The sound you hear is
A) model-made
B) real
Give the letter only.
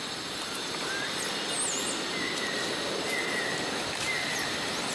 B